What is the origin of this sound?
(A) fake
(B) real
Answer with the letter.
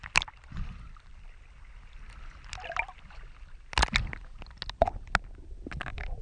B